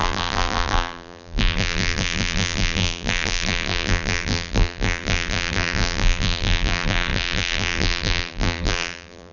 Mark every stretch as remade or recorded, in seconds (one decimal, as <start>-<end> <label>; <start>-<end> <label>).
0.0-9.3 remade